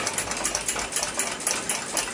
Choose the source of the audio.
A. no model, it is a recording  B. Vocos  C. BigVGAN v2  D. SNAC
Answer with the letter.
A